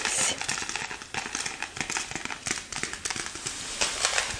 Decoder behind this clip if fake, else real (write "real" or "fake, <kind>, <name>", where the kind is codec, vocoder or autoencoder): real